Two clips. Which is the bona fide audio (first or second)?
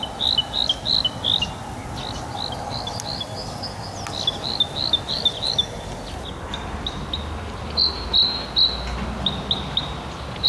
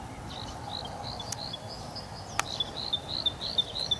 first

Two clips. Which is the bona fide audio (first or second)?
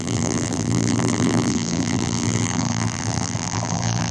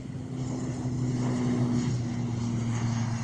second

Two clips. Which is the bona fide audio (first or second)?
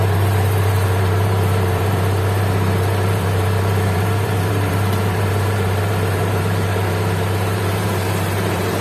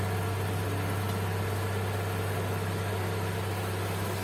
second